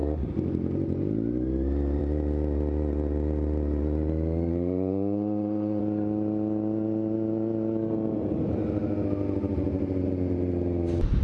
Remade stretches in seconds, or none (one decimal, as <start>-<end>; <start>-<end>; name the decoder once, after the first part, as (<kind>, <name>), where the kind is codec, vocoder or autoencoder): 4.5-5.8 (autoencoder, DAC-VAE)